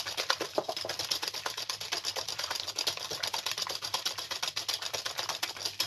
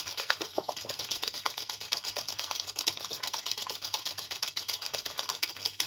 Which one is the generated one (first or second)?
second